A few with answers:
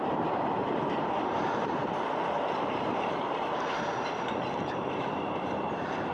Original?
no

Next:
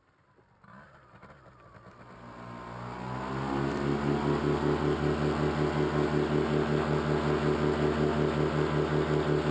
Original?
yes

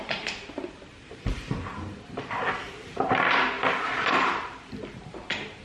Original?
no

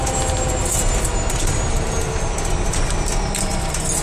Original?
yes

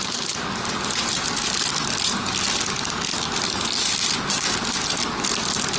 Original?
yes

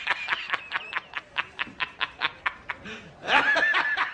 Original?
no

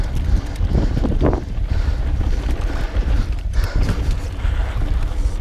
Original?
no